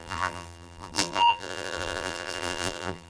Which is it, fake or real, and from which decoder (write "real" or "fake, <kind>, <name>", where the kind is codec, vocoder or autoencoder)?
fake, vocoder, BigVGAN v2